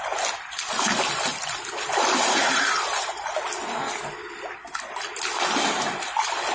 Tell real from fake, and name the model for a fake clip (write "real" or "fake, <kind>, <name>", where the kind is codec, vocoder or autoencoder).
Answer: real